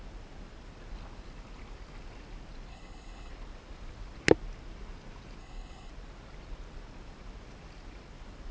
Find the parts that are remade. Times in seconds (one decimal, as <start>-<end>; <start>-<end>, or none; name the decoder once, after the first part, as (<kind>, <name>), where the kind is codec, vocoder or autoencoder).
2.7-3.3 (codec, HILCodec); 5.4-5.9